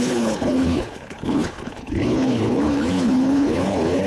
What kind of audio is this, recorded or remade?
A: remade